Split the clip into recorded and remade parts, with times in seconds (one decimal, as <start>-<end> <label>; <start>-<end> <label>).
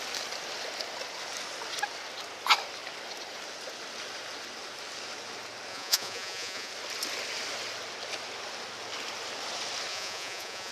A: 0.0-5.7 recorded; 5.7-6.7 remade; 6.7-9.9 recorded; 9.9-10.7 remade